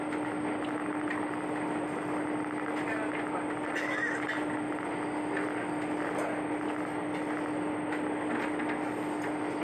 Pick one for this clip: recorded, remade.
recorded